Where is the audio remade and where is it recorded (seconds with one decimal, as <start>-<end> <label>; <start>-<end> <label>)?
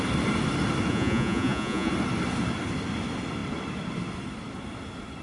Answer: 0.0-0.9 recorded; 0.9-1.9 remade; 1.9-5.2 recorded